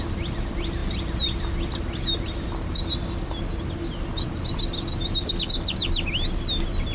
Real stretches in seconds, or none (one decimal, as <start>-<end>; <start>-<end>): 0.0-6.9

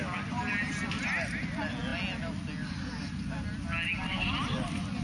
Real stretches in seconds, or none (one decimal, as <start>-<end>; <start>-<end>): 0.0-5.0

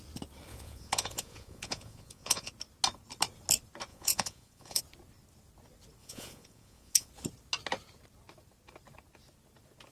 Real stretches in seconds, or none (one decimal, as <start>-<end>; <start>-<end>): 0.0-0.5; 2.5-3.9; 4.8-6.0; 7.1-9.9

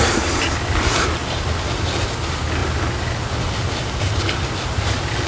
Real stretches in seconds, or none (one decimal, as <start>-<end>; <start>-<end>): 0.0-5.3

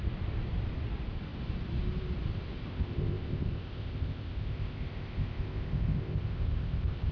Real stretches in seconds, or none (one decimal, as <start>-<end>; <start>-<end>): 0.0-2.7

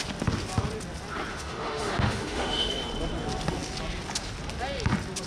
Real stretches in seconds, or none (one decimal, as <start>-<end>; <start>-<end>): 0.0-1.3; 2.7-5.3